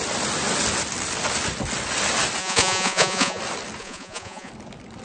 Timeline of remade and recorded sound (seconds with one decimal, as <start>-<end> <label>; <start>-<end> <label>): 0.0-2.4 recorded; 2.4-3.4 remade; 3.4-3.8 recorded; 3.8-4.5 remade; 4.5-5.0 recorded